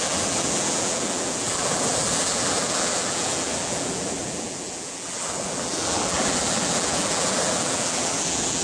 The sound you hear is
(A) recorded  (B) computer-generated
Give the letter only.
B